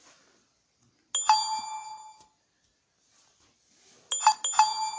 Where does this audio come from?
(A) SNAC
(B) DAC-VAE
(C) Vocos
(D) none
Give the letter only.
D